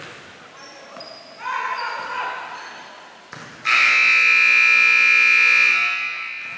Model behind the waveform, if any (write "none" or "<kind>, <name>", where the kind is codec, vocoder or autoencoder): none